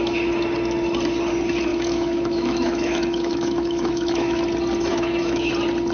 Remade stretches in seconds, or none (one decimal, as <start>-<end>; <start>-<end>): 1.7-4.4; 4.9-5.5